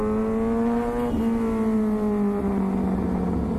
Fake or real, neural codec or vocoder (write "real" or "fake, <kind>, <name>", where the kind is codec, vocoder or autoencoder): real